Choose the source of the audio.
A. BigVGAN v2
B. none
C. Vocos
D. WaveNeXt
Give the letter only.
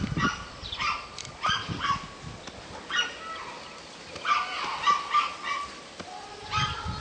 B